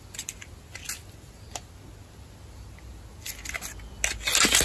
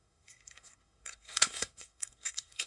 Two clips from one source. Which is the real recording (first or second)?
first